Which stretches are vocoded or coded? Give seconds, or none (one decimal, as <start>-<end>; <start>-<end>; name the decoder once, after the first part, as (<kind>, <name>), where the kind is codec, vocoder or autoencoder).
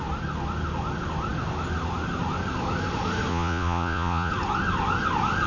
3.3-4.3 (vocoder, Vocos)